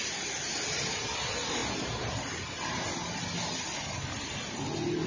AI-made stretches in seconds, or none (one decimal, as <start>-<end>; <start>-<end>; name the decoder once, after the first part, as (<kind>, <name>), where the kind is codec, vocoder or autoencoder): none